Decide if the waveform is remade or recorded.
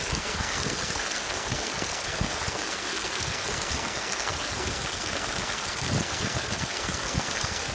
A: remade